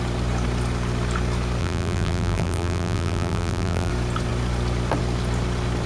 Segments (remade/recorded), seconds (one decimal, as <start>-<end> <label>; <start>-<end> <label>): 0.0-1.6 recorded; 1.6-3.9 remade; 3.9-5.9 recorded